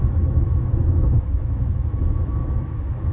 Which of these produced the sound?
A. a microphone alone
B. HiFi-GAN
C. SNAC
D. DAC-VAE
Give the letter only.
D